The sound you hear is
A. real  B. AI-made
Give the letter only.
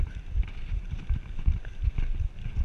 A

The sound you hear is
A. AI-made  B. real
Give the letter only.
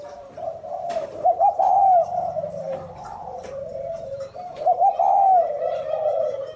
A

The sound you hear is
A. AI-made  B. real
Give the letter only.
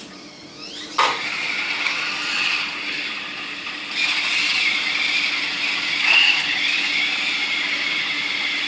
B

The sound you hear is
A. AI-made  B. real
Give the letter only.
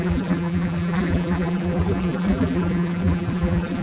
A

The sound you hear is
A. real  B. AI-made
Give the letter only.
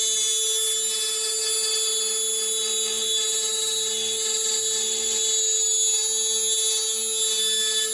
A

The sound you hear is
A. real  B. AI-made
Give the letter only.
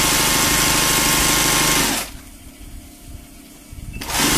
A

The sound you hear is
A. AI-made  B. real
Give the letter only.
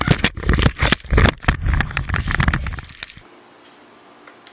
B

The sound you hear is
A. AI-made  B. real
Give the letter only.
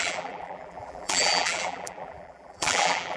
A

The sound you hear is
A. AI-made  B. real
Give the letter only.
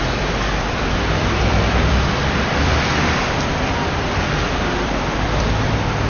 A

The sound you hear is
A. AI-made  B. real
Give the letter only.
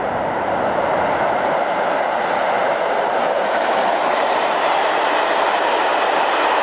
A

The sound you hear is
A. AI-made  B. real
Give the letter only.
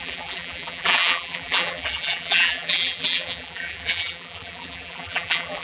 A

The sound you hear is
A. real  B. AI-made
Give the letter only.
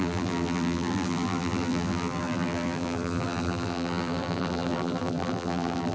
B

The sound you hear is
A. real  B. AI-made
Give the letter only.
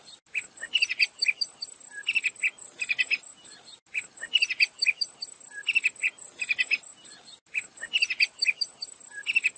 A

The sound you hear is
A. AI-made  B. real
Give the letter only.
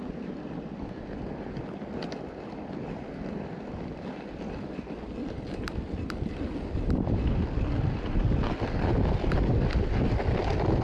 B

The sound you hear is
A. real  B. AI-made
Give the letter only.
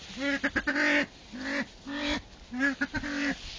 A